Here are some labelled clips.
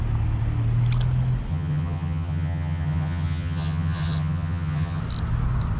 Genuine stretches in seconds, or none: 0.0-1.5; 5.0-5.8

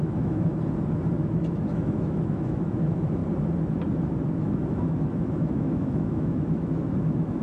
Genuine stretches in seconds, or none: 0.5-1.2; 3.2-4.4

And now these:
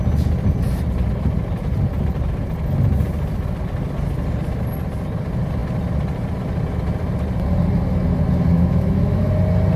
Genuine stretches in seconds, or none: 0.0-8.5; 9.3-9.8

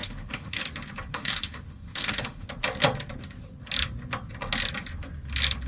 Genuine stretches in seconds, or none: 0.6-1.1; 2.5-5.7

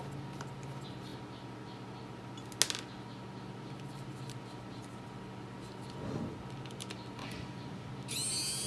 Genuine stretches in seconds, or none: 0.0-7.2; 7.9-8.7